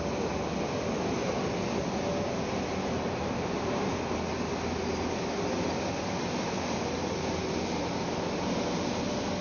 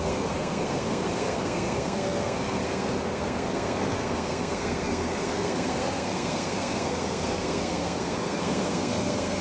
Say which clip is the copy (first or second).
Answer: second